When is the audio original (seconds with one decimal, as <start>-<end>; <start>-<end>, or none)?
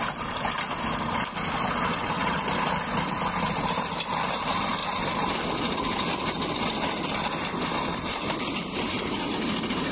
0.0-1.9; 2.4-9.9